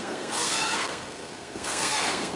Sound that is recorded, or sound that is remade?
remade